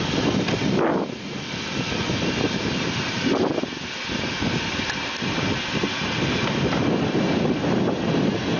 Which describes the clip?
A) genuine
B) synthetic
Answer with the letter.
A